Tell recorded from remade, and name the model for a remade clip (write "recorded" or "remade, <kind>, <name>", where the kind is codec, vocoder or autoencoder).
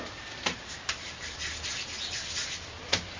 recorded